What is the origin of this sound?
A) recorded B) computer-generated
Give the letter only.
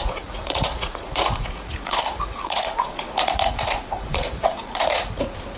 B